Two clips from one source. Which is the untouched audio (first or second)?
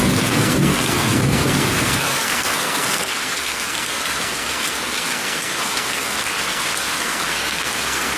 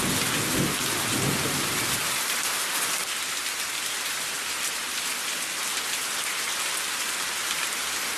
second